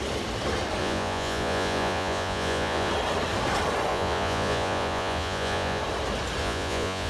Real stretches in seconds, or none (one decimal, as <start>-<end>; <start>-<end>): 0.0-0.8; 2.9-3.9; 5.8-6.4

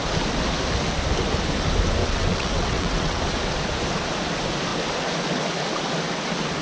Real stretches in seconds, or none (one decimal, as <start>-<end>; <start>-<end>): 0.0-2.0; 3.2-6.6

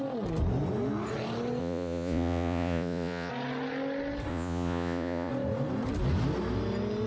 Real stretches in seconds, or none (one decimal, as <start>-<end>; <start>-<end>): 0.0-1.6; 3.3-4.3; 5.3-7.1

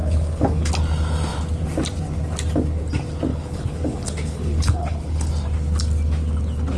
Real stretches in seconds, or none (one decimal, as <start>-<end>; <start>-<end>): 0.7-3.3; 5.3-6.8

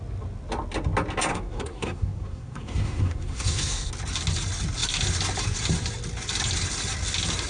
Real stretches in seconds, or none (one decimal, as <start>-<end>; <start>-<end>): 0.0-1.3; 3.9-7.5

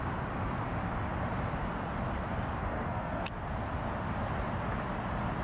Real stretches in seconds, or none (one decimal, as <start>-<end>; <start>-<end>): 0.0-2.6; 3.2-5.4

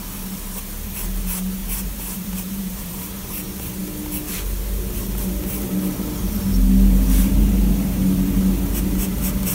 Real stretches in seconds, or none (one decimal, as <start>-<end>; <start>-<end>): 0.0-1.6; 3.3-9.5